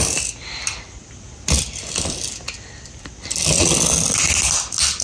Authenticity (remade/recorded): recorded